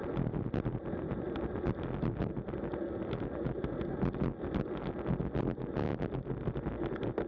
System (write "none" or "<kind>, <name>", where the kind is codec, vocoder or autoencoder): none